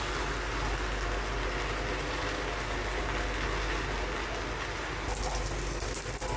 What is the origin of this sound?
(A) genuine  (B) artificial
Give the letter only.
A